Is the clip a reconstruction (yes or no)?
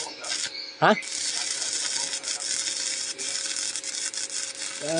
no